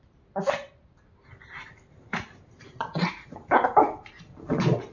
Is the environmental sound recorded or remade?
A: recorded